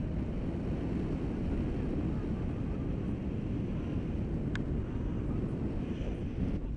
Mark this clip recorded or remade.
recorded